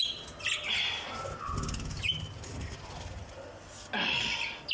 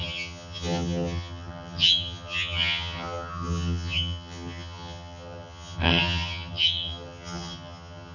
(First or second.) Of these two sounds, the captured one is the first